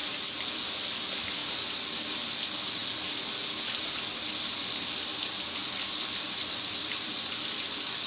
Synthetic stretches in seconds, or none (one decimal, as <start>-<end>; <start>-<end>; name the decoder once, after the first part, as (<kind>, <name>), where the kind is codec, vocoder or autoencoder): 0.0-0.7 (vocoder, BigVGAN v2); 5.6-7.3